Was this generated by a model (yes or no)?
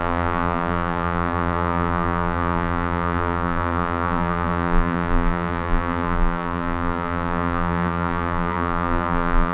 yes